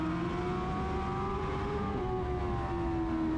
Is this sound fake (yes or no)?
no